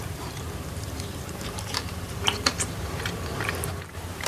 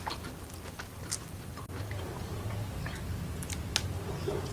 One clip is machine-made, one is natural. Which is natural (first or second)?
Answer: second